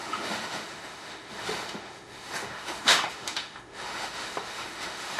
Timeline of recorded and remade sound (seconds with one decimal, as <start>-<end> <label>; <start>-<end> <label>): 0.0-5.2 remade